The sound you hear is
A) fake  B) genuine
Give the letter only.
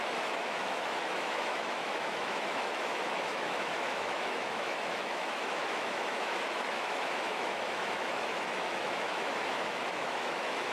A